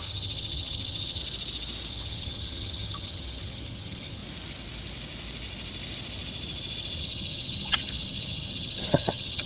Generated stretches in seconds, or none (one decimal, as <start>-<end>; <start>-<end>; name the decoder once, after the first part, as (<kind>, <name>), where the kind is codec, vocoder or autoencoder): 0.0-1.2 (vocoder, HiFi-GAN); 1.9-4.2; 7.0-9.5